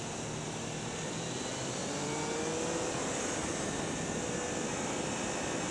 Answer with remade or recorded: recorded